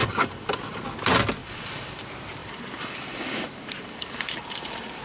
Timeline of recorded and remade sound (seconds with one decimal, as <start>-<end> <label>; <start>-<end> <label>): 0.0-0.8 remade; 0.8-1.4 recorded; 1.4-2.0 remade; 2.0-2.4 recorded; 2.4-5.0 remade